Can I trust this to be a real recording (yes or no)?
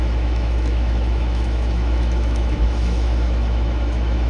no